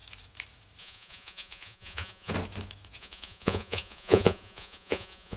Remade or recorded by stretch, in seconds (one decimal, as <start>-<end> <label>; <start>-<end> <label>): 0.0-0.8 recorded; 0.8-2.3 remade; 2.3-3.0 recorded; 3.0-5.4 remade